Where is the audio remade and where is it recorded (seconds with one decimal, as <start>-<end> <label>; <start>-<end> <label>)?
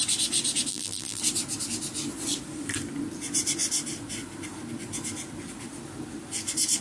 0.0-0.7 recorded; 0.7-1.2 remade; 1.2-6.8 recorded